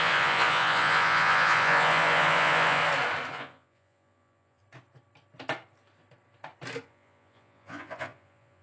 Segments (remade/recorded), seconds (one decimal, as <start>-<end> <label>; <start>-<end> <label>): 0.0-2.8 remade; 2.8-3.3 recorded; 3.3-4.6 remade; 4.6-6.8 recorded; 6.8-8.6 remade